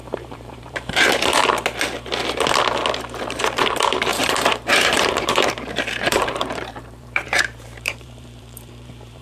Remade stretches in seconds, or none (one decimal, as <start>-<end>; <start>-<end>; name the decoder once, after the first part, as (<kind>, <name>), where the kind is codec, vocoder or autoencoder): 0.0-1.4 (vocoder, BigVGAN v2); 3.2-9.2

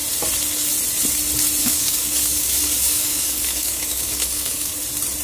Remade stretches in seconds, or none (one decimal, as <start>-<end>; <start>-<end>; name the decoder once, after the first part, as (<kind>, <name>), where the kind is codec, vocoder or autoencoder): 1.6-4.7 (codec, DAC)

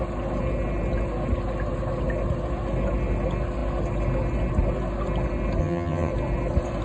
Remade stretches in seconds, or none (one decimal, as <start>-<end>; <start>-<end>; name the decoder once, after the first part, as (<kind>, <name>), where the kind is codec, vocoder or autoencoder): 5.6-6.1 (vocoder, HiFi-GAN)

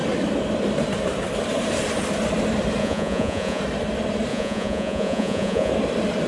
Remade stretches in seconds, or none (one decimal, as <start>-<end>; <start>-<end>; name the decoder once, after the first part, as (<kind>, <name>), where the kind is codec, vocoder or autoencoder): 2.8-3.6 (vocoder, Vocos); 4.3-5.7